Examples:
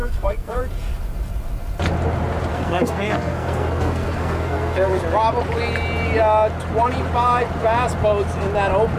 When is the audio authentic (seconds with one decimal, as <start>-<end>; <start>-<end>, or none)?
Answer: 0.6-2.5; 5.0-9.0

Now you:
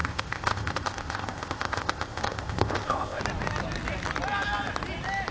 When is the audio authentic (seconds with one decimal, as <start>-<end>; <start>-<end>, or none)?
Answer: 3.2-5.3

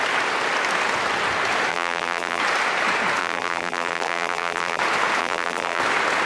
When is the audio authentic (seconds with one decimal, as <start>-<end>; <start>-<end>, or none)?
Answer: 0.0-1.7; 2.4-3.2; 4.8-5.2; 5.8-6.3

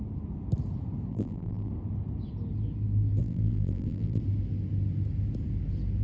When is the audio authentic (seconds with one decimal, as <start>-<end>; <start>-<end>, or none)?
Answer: 0.0-1.1; 1.7-3.2; 4.2-6.0

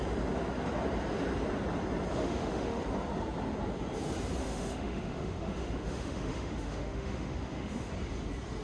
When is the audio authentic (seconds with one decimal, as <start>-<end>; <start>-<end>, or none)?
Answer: 0.0-2.2; 2.8-4.4; 7.9-8.6